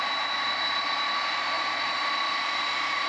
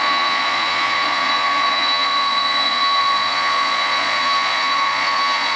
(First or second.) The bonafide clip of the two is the first